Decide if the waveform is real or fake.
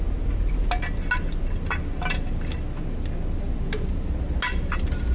real